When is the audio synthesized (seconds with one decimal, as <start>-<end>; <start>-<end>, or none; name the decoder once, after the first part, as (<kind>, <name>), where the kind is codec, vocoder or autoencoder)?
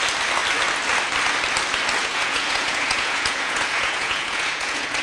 2.0-5.0 (vocoder, Vocos)